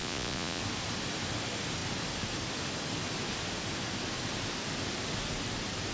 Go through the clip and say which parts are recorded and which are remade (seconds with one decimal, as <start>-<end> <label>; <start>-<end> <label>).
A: 0.0-0.6 remade; 0.6-5.9 recorded